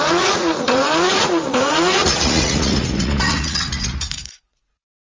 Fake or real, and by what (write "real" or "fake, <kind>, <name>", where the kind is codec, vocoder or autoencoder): fake, vocoder, Vocos